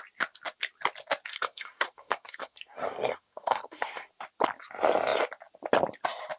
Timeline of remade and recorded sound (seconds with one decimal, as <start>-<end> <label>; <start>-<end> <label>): 0.0-1.3 recorded; 1.3-4.1 remade; 4.1-6.4 recorded